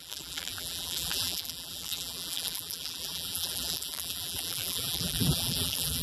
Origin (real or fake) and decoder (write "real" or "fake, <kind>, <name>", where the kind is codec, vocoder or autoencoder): fake, vocoder, BigVGAN v2